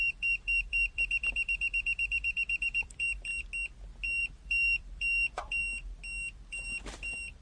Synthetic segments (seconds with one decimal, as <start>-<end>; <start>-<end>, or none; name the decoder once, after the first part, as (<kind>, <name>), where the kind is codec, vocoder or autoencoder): 0.0-3.3 (vocoder, BigVGAN v2); 4.2-5.6; 6.3-7.4